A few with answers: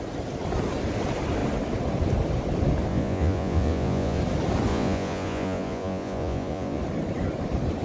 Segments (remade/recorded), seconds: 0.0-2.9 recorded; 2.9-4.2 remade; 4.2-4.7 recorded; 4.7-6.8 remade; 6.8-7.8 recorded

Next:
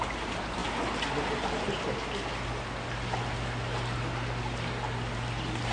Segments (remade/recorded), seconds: 0.0-5.7 recorded

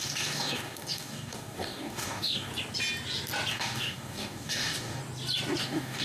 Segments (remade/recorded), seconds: 0.0-2.5 remade; 2.5-3.5 recorded; 3.5-5.0 remade; 5.0-5.6 recorded; 5.6-6.0 remade

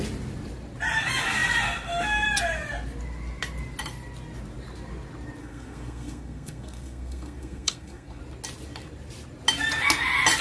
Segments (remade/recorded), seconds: 0.0-5.4 recorded; 5.4-8.2 remade; 8.2-10.4 recorded

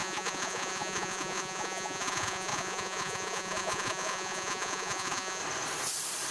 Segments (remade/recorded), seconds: 0.0-5.4 remade; 5.4-6.3 recorded

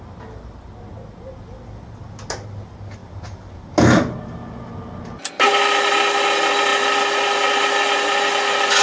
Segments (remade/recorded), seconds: 0.0-8.8 recorded

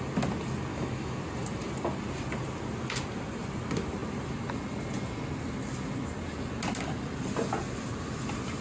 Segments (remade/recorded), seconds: 0.0-0.7 recorded; 0.7-1.2 remade; 1.2-8.6 recorded